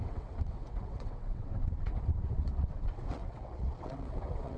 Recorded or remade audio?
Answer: remade